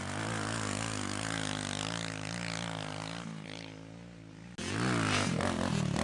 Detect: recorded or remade recorded